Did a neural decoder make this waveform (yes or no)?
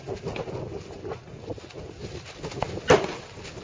no